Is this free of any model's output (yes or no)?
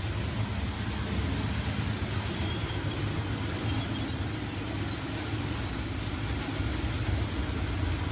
yes